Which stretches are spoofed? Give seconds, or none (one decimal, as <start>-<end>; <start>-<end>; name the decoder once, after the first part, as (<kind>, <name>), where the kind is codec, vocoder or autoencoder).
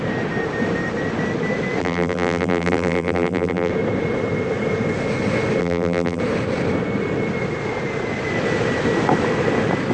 1.8-3.7 (vocoder, BigVGAN v2); 5.6-6.2